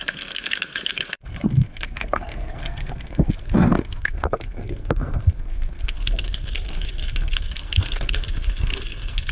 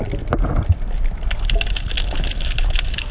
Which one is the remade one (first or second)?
first